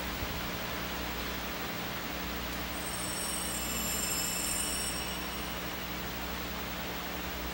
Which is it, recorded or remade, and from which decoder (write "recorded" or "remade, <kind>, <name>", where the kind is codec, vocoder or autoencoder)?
recorded